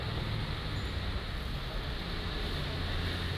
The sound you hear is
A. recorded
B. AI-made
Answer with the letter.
A